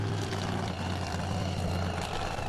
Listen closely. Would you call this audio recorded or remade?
remade